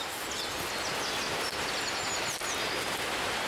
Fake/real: real